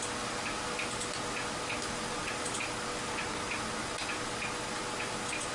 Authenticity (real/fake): real